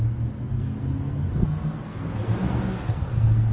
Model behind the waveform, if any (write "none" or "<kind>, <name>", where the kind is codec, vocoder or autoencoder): codec, SNAC